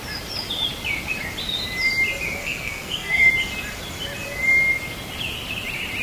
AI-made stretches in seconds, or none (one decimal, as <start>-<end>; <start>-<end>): 2.4-3.3